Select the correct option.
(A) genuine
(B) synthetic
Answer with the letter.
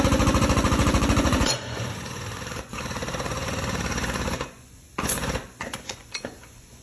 B